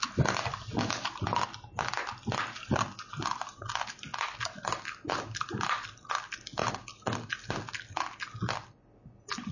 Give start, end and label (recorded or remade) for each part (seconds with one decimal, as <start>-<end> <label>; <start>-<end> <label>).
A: 0.0-9.5 recorded